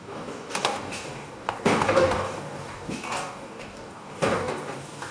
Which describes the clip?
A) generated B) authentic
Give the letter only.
A